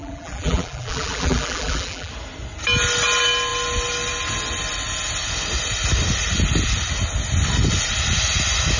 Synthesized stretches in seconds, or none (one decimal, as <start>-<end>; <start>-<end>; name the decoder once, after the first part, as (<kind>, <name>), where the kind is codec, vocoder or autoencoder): 0.0-2.1 (vocoder, BigVGAN v2)